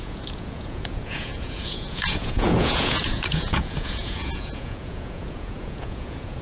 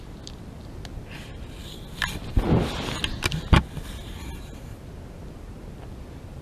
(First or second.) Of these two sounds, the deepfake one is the first